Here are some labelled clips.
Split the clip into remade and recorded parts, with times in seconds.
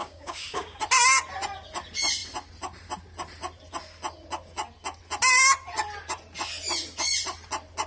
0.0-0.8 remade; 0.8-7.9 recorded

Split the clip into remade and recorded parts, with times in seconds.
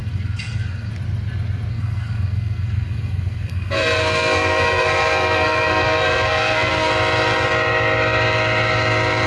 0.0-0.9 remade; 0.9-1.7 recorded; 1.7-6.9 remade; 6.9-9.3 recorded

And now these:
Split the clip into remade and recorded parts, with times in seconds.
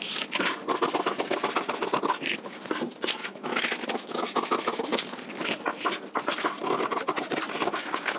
0.0-3.2 recorded; 3.2-4.8 remade; 4.8-8.2 recorded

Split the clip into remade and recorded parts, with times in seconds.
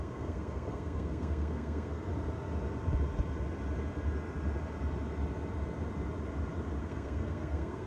0.0-2.1 remade; 2.1-6.8 recorded; 6.8-7.9 remade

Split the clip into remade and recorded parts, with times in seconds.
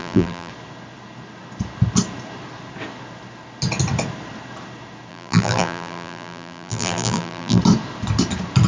0.0-0.5 remade; 0.5-5.1 recorded; 5.1-7.6 remade; 7.6-8.7 recorded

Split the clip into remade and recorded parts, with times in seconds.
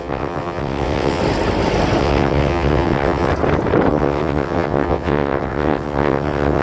0.0-1.2 remade; 1.2-2.0 recorded; 2.0-3.3 remade; 3.3-3.9 recorded; 3.9-6.6 remade